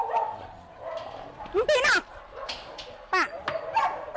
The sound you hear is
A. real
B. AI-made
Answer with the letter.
A